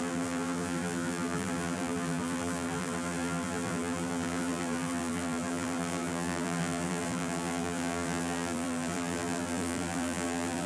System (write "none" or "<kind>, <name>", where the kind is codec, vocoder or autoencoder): vocoder, BigVGAN v2